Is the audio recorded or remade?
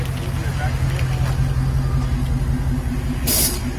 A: recorded